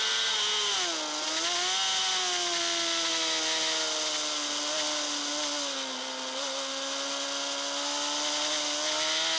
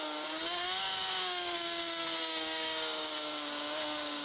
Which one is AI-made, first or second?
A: second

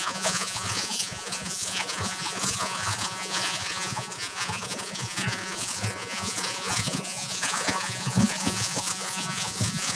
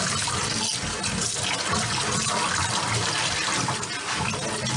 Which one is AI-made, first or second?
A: first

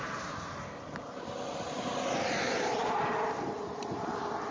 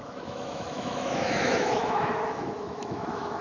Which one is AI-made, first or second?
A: second